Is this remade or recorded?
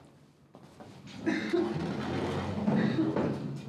recorded